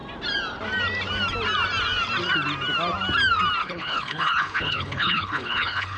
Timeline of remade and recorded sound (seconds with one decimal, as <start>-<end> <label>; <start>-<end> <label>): 0.0-3.6 recorded; 3.6-6.0 remade